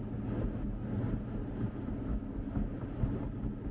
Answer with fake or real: real